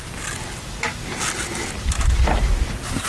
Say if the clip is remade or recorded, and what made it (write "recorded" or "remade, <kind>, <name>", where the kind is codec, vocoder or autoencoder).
recorded